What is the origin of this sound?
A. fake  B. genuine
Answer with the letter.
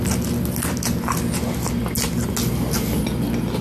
B